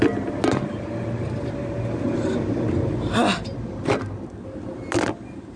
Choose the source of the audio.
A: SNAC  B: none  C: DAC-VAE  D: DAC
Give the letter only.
B